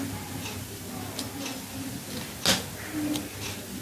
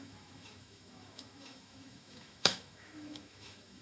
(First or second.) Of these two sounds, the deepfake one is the second